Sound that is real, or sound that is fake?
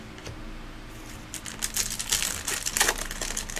real